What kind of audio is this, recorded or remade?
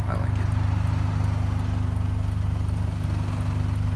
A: recorded